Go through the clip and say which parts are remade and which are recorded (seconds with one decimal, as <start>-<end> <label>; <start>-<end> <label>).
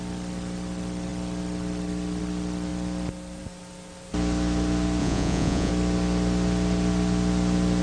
0.0-5.0 recorded; 5.0-5.7 remade; 5.7-7.8 recorded